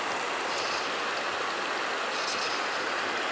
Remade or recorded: recorded